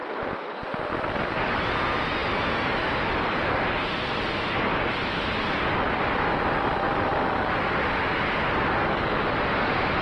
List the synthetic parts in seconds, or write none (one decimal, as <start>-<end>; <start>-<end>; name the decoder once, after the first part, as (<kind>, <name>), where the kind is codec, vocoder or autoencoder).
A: none